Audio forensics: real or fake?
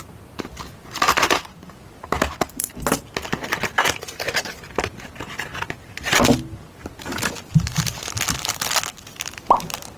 real